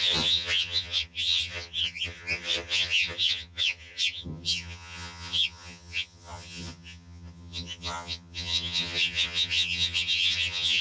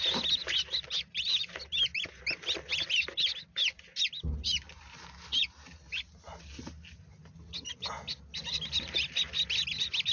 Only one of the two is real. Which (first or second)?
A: second